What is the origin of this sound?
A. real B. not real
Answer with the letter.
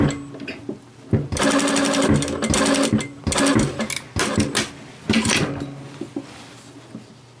A